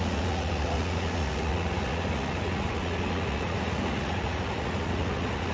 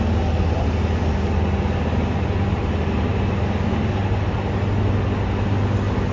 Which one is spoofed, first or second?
first